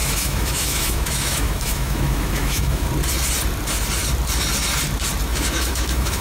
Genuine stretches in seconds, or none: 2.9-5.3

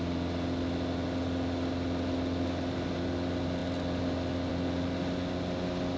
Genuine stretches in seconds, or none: 0.0-6.0

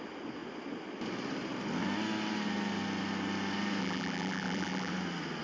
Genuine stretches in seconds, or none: 0.0-3.8; 4.9-5.4

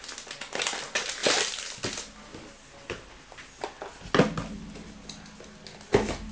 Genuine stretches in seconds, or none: 0.0-6.3

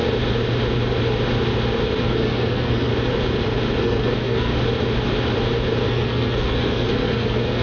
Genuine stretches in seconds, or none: 0.0-2.0; 2.9-3.8; 4.5-5.9

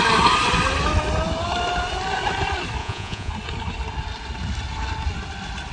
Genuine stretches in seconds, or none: 0.0-2.8; 3.3-5.7

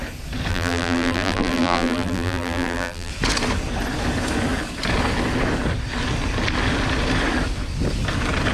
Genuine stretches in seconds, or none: 0.0-0.5; 3.1-8.5

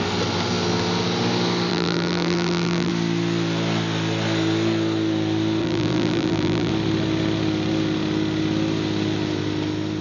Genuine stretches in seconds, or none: 0.0-1.7; 2.9-5.6; 6.7-10.0